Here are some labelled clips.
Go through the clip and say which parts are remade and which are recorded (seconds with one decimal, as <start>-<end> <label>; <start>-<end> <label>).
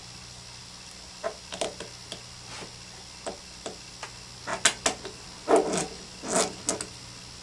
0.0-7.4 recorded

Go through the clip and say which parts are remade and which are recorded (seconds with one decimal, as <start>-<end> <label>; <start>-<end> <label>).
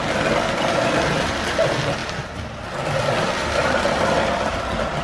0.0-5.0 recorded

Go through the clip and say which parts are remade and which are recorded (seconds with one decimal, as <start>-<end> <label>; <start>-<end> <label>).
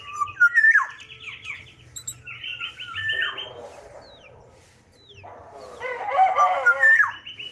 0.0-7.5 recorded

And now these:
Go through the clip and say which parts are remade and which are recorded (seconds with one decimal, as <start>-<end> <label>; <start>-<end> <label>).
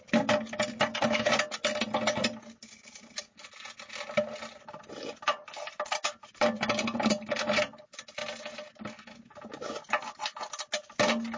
0.0-2.6 recorded; 2.6-6.8 remade; 6.8-8.2 recorded; 8.2-9.9 remade; 9.9-11.4 recorded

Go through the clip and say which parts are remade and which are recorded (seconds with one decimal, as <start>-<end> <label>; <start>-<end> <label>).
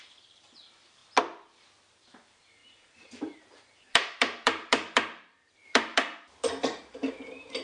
0.0-1.0 remade; 1.0-1.9 recorded; 1.9-7.6 remade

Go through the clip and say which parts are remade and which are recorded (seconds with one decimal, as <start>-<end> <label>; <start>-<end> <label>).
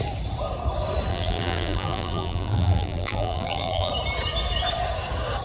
0.0-1.1 recorded; 1.1-3.9 remade; 3.9-5.4 recorded